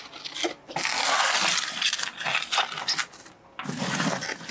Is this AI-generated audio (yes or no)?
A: no